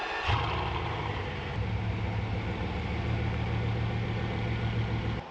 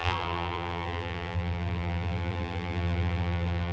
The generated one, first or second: second